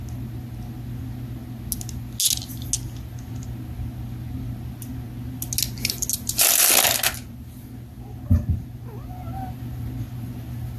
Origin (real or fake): real